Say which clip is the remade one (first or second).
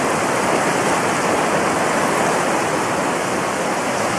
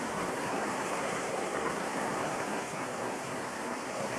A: second